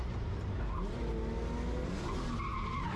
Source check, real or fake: real